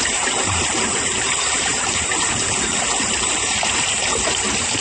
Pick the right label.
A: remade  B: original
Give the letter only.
A